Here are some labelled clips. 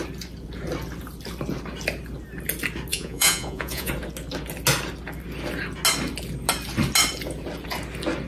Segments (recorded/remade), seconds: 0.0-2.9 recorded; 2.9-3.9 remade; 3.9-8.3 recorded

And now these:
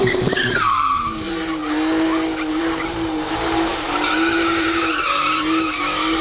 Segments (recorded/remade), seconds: 0.0-1.6 remade; 1.6-2.6 recorded; 2.6-6.2 remade

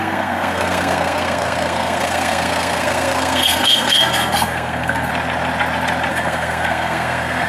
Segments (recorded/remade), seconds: 0.0-5.1 remade; 5.1-6.1 recorded; 6.1-7.5 remade

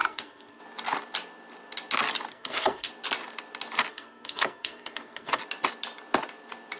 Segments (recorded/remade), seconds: 0.0-0.6 remade; 0.6-2.3 recorded; 2.3-2.9 remade; 2.9-3.9 recorded; 3.9-5.4 remade; 5.4-6.8 recorded